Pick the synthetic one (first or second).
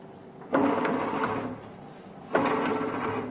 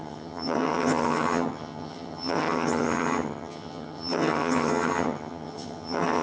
second